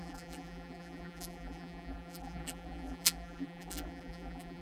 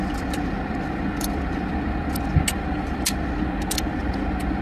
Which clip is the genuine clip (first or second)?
second